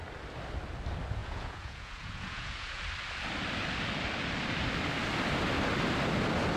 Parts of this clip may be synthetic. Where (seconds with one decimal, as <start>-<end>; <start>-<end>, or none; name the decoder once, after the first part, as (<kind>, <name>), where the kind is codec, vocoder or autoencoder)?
1.2-2.8 (vocoder, Vocos)